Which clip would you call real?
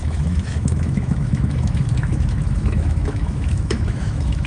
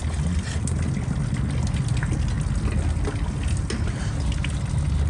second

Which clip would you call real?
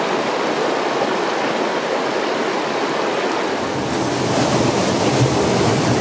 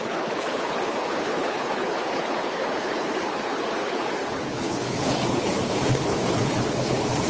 first